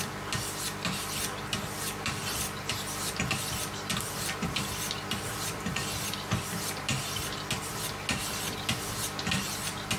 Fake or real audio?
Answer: real